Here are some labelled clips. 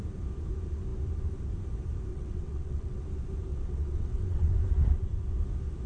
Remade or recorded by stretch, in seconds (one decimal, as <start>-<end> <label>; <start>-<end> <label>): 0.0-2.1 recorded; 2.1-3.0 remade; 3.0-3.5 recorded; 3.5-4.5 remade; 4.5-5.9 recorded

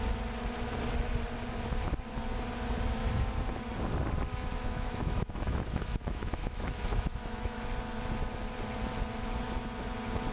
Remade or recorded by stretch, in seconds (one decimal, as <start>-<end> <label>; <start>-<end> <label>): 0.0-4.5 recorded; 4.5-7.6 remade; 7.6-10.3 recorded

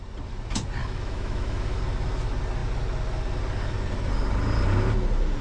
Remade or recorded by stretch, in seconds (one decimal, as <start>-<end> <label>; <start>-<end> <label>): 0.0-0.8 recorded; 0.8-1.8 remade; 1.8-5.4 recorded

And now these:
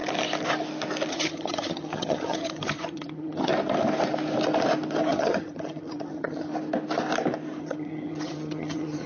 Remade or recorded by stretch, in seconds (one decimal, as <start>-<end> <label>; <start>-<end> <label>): 0.0-1.1 recorded; 1.1-3.5 remade; 3.5-5.1 recorded; 5.1-6.5 remade; 6.5-7.6 recorded; 7.6-9.1 remade

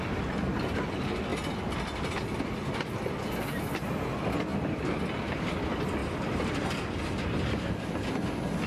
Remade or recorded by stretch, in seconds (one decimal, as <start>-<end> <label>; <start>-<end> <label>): 0.0-8.7 recorded

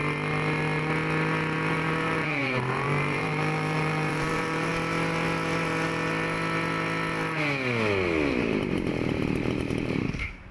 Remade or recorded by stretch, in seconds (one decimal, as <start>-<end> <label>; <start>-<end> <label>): 0.0-1.7 recorded; 1.7-4.7 remade; 4.7-8.3 recorded; 8.3-10.5 remade